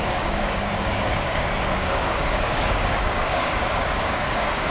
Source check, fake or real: fake